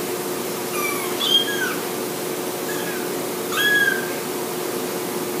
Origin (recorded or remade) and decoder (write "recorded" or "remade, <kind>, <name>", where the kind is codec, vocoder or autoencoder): recorded